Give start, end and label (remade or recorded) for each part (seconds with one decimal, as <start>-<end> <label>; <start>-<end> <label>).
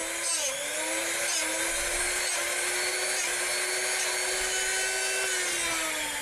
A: 0.0-6.2 recorded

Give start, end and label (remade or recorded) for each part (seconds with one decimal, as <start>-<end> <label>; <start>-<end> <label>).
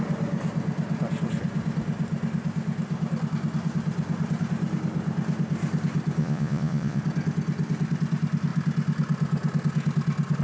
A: 0.0-6.2 recorded; 6.2-7.0 remade; 7.0-10.4 recorded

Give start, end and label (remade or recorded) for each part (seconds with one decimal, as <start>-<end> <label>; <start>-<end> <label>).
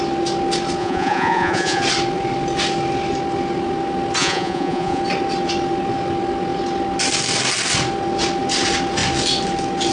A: 0.0-0.8 recorded; 0.8-1.8 remade; 1.8-4.2 recorded; 4.2-5.0 remade; 5.0-9.9 recorded